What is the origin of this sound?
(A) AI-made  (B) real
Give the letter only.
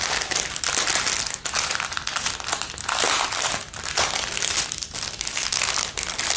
B